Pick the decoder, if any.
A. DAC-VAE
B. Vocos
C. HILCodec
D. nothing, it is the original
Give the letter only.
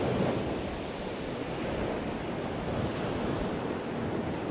D